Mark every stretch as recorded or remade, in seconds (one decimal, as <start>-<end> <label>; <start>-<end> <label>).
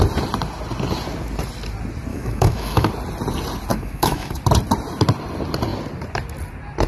0.0-2.1 recorded; 2.1-2.9 remade; 2.9-3.7 recorded; 3.7-4.4 remade; 4.4-6.9 recorded